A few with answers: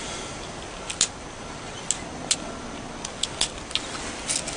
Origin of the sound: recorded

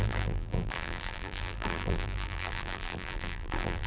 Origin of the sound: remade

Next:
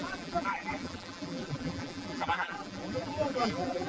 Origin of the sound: remade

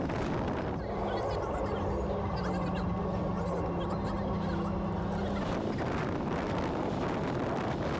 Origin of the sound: recorded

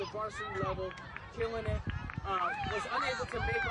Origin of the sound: recorded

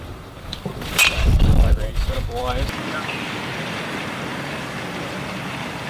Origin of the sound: remade